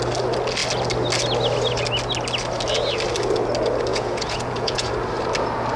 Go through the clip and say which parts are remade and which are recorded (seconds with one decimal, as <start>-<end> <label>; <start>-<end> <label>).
0.0-3.9 recorded; 3.9-4.9 remade; 4.9-5.8 recorded